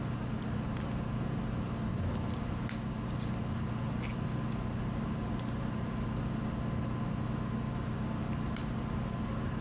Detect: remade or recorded recorded